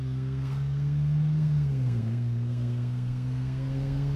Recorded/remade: remade